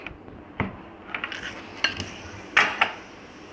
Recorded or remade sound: recorded